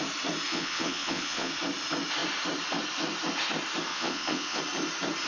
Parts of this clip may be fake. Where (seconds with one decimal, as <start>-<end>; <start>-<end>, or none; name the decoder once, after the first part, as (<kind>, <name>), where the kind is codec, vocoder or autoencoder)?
0.5-1.5 (vocoder, Vocos); 3.9-4.6